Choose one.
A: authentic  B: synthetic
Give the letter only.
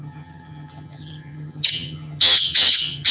B